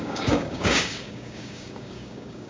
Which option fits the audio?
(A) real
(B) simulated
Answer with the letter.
B